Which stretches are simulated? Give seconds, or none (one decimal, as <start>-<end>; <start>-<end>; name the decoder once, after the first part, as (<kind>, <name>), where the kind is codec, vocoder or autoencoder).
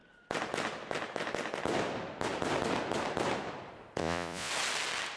4.0-4.5 (vocoder, Vocos)